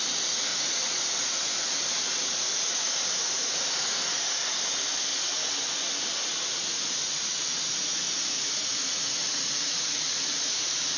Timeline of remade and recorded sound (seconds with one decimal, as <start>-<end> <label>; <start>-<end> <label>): 0.0-4.4 remade; 4.4-7.0 recorded; 7.0-11.0 remade